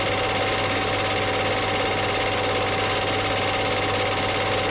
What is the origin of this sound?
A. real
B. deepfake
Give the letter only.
A